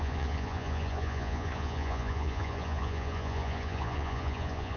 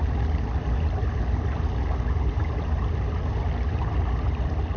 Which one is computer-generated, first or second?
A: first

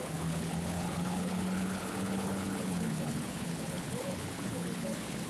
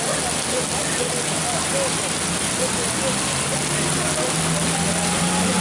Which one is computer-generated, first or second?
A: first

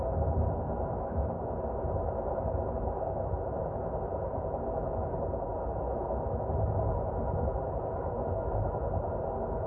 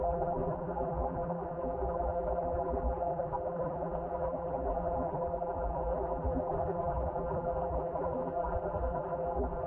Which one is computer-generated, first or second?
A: second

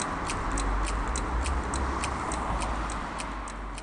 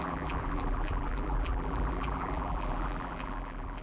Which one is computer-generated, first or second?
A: second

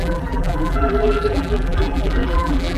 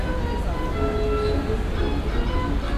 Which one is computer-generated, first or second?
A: first